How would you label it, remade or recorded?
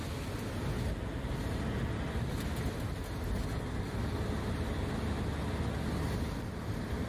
recorded